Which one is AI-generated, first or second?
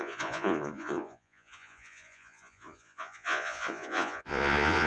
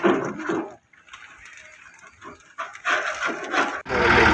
first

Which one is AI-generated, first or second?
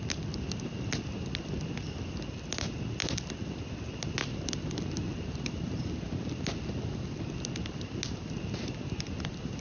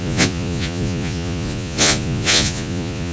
second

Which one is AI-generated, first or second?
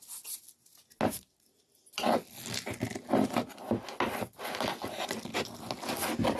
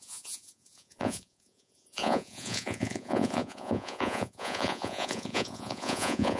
second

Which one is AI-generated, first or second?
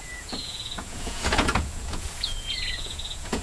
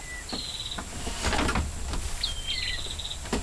first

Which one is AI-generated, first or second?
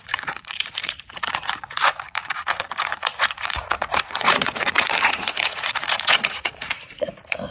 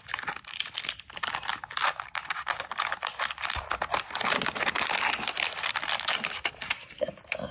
first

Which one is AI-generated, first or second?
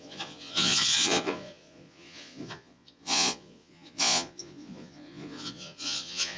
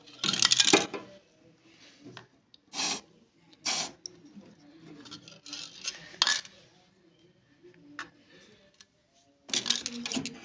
first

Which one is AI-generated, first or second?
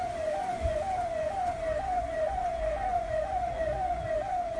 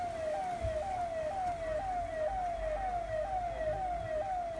first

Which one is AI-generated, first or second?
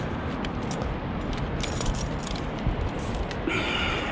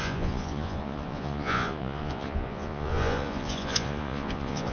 second